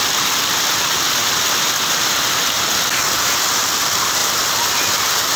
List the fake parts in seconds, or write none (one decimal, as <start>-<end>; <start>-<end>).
none